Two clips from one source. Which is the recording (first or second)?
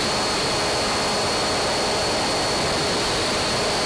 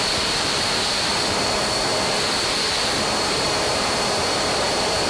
first